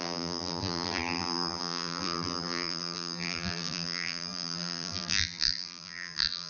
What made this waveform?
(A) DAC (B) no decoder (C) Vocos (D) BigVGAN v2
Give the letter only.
D